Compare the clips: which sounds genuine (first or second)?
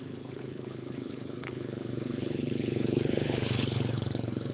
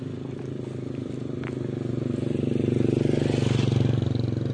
second